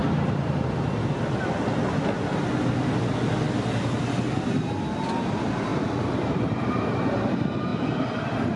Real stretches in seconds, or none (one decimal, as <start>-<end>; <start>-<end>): 1.2-5.7; 7.3-7.7

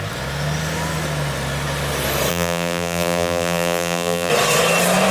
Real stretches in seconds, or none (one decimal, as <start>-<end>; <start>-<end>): 0.0-2.3; 4.3-5.1

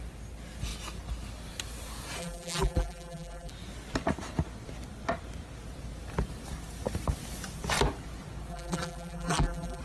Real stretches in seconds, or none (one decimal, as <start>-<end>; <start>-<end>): 0.0-2.2; 3.5-8.5

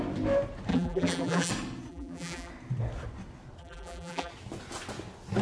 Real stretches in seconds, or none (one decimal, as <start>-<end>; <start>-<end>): 0.0-0.7; 1.5-1.9; 2.5-3.6; 4.3-5.4

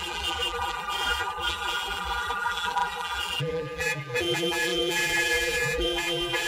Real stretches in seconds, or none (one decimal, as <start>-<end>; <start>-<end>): none

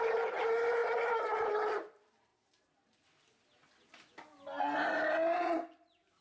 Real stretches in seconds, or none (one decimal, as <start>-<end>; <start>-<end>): 2.3-6.2